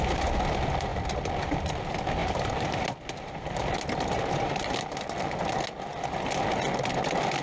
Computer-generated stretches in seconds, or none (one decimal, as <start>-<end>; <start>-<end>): 2.2-2.8

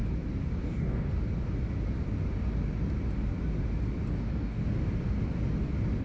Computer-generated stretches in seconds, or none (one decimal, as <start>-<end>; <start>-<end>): 0.6-1.1; 4.1-4.6

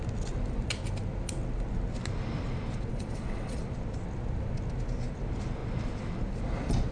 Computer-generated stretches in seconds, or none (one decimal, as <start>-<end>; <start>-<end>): 2.9-3.6

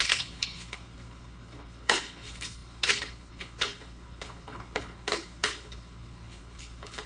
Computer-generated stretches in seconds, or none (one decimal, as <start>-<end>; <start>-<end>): 0.0-7.1